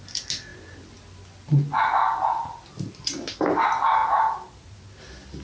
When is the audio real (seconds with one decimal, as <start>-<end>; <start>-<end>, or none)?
0.0-5.4

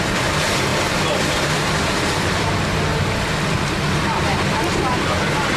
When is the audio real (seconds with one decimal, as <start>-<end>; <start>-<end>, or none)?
0.7-1.3; 2.9-5.6

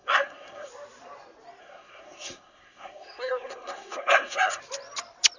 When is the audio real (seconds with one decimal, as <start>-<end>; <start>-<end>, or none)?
0.7-1.6; 4.6-5.4

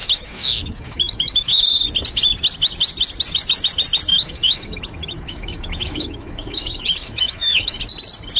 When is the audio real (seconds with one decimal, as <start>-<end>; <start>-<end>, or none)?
1.7-4.1; 7.8-8.4

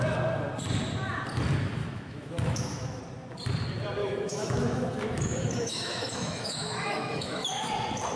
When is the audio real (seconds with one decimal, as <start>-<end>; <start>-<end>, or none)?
0.0-1.8; 3.0-4.0; 7.7-8.2

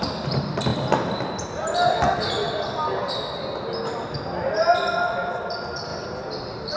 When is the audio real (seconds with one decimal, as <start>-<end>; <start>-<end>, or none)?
0.0-6.8

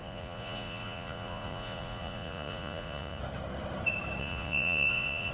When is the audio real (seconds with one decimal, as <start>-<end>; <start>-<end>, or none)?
3.2-4.2

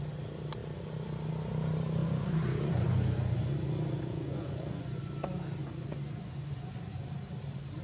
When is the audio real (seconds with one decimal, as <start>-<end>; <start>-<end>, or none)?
0.0-2.0; 5.0-5.6; 6.7-7.8